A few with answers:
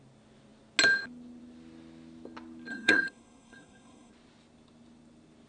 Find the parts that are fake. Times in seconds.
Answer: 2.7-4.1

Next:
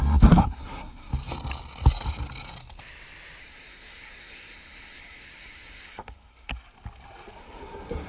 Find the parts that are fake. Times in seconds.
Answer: 0.0-1.1; 3.4-6.5; 7.4-8.1